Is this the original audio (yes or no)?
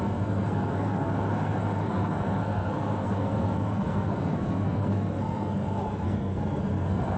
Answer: no